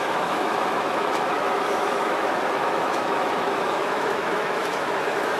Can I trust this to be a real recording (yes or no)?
no